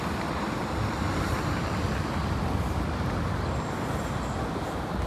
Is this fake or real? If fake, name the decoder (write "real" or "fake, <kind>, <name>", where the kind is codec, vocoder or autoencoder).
real